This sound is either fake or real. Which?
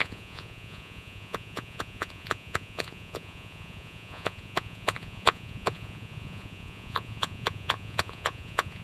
fake